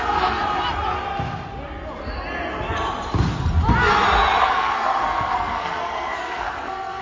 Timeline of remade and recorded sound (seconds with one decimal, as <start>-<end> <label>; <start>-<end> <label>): 0.0-0.4 remade; 0.4-4.4 recorded; 4.4-7.0 remade